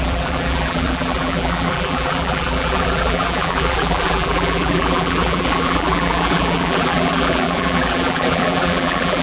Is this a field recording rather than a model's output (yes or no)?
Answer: no